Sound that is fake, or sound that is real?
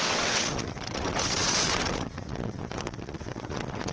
fake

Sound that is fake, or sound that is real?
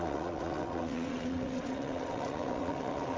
fake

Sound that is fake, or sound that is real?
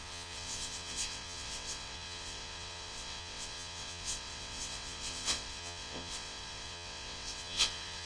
fake